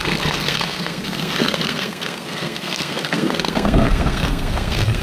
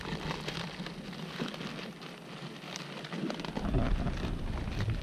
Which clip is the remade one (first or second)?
first